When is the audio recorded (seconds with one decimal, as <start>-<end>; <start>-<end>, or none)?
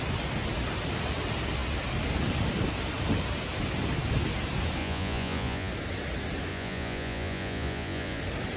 0.0-4.8; 5.7-6.5; 8.2-8.6